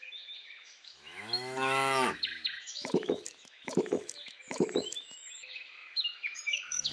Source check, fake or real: fake